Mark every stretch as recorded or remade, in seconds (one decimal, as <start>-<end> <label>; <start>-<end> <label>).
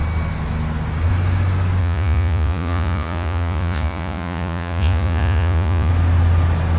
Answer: 0.0-1.8 recorded; 1.8-5.9 remade; 5.9-6.8 recorded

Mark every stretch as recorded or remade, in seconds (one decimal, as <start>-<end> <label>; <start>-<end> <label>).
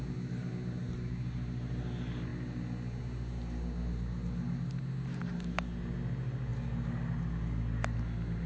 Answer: 0.0-8.5 recorded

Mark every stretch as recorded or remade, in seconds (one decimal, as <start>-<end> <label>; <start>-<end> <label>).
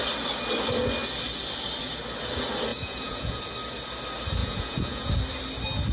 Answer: 0.0-2.7 recorded; 2.7-3.4 remade; 3.4-4.4 recorded; 4.4-5.1 remade; 5.1-5.9 recorded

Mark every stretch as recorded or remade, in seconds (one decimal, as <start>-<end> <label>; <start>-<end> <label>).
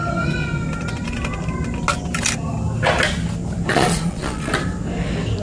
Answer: 0.0-3.7 recorded; 3.7-4.5 remade; 4.5-5.4 recorded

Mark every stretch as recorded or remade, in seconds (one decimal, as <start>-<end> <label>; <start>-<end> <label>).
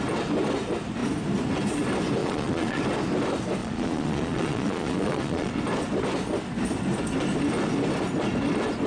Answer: 0.0-2.2 recorded; 2.2-2.8 remade; 2.8-3.6 recorded; 3.6-5.5 remade; 5.5-8.9 recorded